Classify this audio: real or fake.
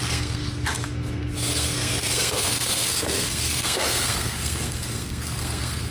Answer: fake